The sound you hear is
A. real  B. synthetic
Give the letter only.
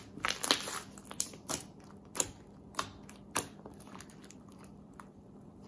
B